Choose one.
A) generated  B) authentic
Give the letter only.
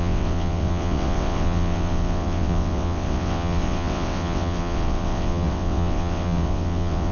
A